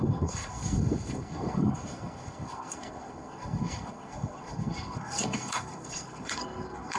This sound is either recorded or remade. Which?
remade